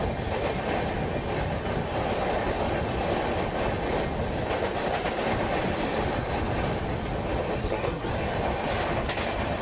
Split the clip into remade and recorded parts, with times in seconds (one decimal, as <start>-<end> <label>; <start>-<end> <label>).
0.0-7.6 recorded; 7.6-8.1 remade; 8.1-9.6 recorded